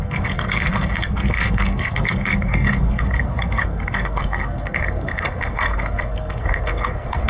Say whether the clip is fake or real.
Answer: fake